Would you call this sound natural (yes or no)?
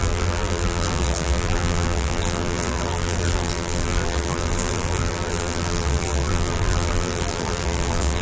no